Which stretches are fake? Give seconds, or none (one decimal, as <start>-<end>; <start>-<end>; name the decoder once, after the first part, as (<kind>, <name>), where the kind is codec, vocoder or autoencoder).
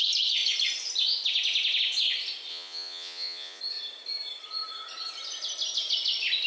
2.5-3.6 (vocoder, Vocos)